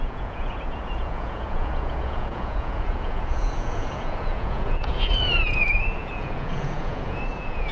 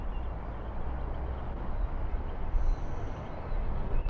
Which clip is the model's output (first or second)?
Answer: first